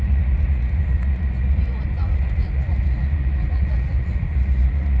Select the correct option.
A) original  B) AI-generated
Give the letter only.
B